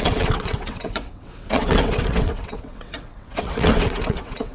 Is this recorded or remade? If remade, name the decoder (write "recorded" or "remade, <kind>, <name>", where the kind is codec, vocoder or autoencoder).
remade, vocoder, WaveNeXt